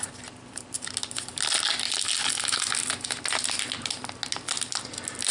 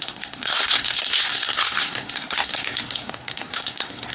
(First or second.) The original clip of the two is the first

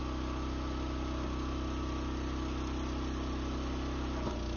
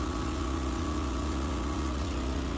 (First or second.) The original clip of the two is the first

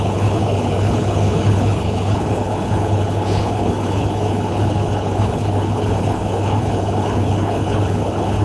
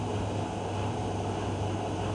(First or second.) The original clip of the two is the second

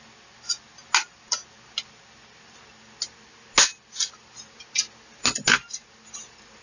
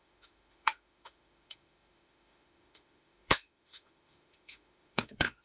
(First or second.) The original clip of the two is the first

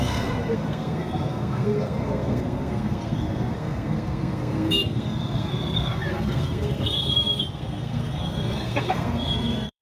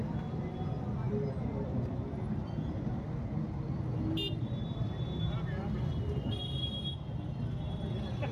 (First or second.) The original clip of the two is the second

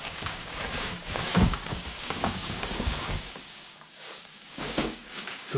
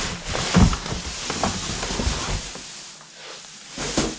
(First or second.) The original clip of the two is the second